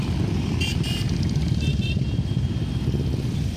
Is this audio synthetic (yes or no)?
no